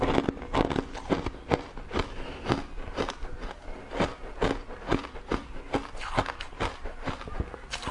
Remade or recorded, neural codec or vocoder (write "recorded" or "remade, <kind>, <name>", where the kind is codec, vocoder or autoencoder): recorded